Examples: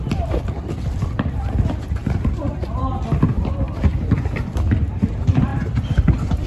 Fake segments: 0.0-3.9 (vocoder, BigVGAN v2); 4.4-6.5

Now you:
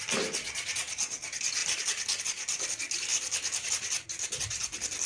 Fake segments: 1.6-2.2 (vocoder, BigVGAN v2)